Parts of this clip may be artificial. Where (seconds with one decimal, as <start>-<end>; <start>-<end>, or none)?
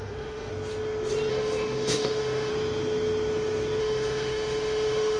0.0-0.5; 1.3-2.5; 3.8-5.2